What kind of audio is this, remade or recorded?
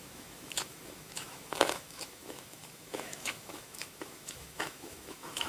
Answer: remade